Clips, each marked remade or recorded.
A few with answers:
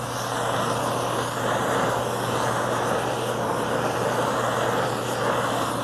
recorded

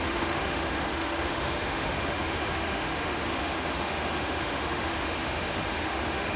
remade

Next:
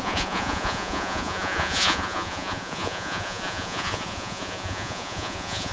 remade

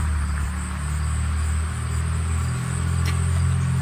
recorded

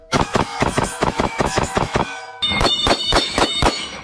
remade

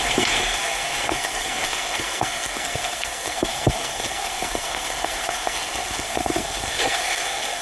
remade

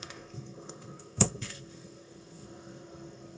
remade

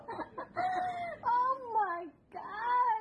recorded